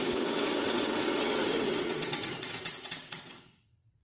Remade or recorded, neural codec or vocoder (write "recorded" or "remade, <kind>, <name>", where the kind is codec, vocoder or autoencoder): remade, vocoder, WaveNeXt